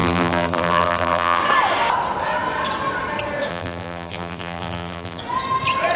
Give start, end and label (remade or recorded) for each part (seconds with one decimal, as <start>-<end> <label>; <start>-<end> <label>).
0.0-1.4 remade; 1.4-3.5 recorded; 3.5-5.2 remade; 5.2-6.0 recorded